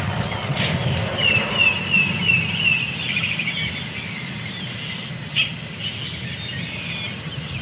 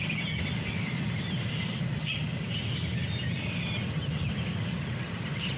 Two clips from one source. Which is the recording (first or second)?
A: first